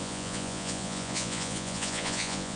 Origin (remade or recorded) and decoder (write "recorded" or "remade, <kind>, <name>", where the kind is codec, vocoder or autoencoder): remade, vocoder, Vocos